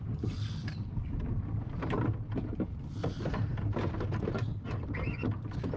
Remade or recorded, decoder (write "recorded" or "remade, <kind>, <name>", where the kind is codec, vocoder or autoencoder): recorded